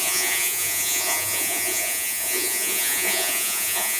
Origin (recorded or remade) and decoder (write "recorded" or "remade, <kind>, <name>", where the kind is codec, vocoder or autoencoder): remade, vocoder, Vocos